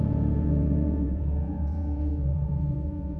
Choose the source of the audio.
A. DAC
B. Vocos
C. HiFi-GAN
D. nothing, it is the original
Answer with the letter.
B